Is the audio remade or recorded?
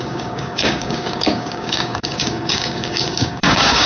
remade